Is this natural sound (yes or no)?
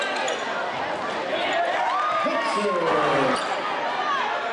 yes